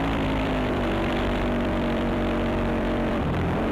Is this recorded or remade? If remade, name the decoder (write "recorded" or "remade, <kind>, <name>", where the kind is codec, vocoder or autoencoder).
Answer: remade, vocoder, BigVGAN v2